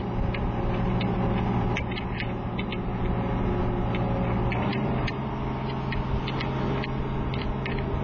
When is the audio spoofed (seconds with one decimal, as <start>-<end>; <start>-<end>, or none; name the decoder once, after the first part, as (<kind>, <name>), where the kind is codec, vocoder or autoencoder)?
4.7-5.3 (vocoder, BigVGAN v2)